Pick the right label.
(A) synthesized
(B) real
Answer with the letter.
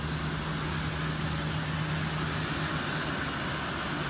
B